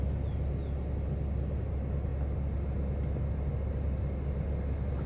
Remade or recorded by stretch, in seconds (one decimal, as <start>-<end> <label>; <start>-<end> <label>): 0.0-5.1 recorded